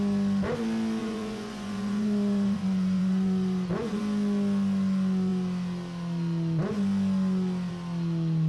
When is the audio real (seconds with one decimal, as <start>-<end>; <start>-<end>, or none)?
0.0-1.0; 4.0-8.5